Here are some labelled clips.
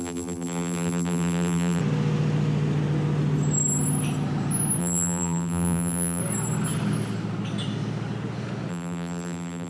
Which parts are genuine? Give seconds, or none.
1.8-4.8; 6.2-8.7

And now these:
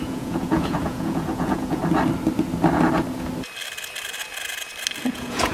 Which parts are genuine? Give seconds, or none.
1.8-5.1

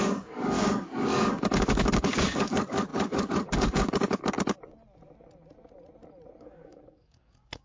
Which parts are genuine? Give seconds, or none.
4.2-6.4